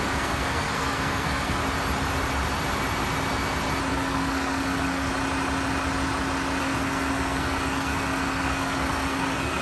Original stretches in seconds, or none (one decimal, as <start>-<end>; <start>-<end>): 1.6-3.9; 5.1-6.6